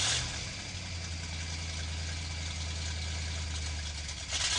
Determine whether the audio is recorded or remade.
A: recorded